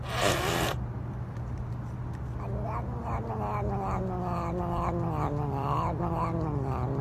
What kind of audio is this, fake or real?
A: real